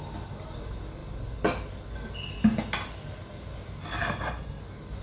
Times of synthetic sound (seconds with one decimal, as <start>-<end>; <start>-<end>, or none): 4.0-4.6